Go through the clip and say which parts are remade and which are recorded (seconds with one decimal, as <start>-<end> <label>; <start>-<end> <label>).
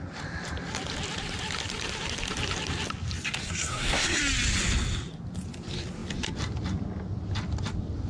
0.0-3.4 recorded; 3.4-4.2 remade; 4.2-8.1 recorded